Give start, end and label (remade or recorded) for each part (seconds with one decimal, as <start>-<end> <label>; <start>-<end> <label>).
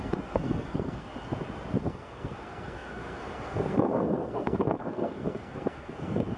0.0-1.1 remade; 1.1-1.8 recorded; 1.8-6.4 remade